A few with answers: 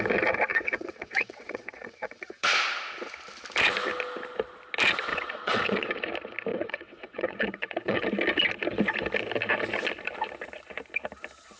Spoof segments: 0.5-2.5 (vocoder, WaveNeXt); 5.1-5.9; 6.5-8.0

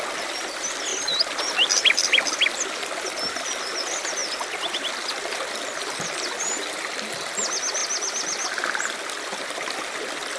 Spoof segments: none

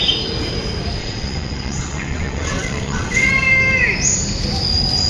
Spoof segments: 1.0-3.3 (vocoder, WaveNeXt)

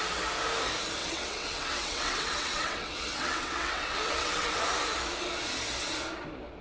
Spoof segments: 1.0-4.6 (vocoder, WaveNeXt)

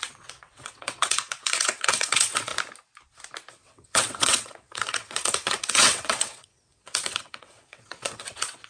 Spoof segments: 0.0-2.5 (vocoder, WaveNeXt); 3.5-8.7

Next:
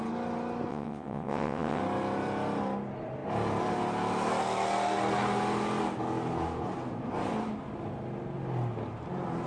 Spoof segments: 0.7-1.8 (vocoder, WaveNeXt)